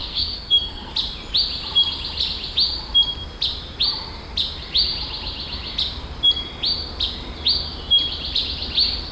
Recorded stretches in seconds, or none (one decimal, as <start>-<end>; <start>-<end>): 0.9-9.1